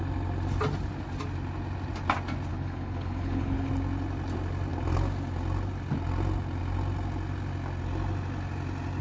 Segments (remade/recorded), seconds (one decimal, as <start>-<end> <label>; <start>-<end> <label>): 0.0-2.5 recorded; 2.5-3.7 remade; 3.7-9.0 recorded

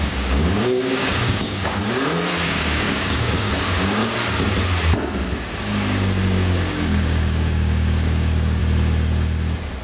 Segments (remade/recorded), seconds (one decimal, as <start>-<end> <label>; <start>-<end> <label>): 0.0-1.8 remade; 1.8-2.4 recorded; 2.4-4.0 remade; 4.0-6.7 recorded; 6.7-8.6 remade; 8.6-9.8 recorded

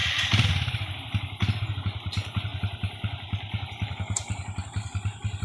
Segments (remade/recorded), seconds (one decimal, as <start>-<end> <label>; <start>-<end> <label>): 0.0-5.4 recorded

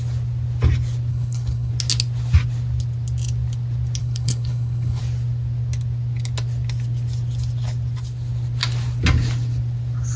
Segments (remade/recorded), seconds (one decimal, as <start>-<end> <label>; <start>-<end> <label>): 0.0-1.1 recorded; 1.1-1.7 remade; 1.7-4.0 recorded; 4.0-5.0 remade; 5.0-10.2 recorded

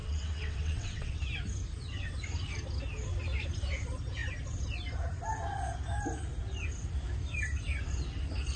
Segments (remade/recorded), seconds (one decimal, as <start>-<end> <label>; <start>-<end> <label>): 0.0-1.2 remade; 1.2-8.6 recorded

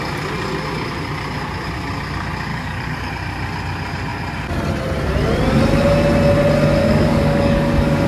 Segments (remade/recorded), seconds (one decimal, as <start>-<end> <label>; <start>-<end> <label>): 0.0-2.5 recorded; 2.5-3.1 remade; 3.1-6.8 recorded; 6.8-8.1 remade